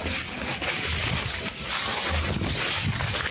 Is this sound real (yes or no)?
yes